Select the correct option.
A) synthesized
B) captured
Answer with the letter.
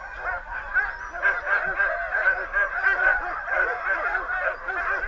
B